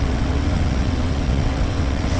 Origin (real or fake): fake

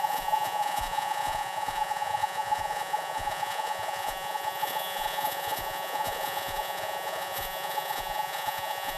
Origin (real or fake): fake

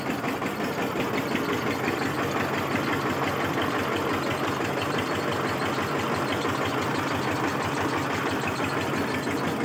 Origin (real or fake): real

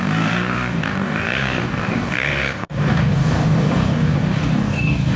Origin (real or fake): fake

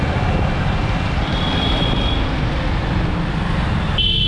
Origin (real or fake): real